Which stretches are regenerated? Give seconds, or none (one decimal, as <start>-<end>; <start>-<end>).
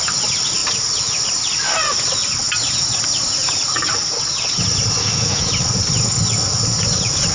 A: 5.0-5.5